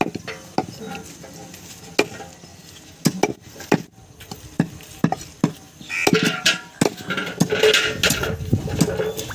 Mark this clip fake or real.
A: real